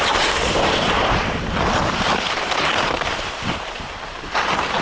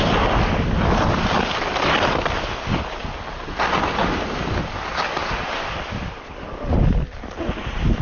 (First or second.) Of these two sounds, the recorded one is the second